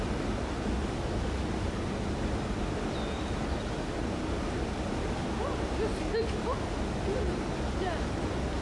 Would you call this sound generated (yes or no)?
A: no